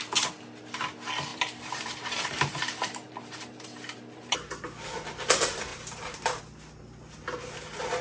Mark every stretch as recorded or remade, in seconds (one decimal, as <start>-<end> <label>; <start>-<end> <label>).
0.0-1.3 recorded; 1.3-4.5 remade; 4.5-5.7 recorded; 5.7-6.4 remade; 6.4-8.0 recorded